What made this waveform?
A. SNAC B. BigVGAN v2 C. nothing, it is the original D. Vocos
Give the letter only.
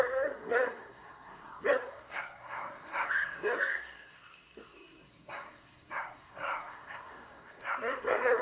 A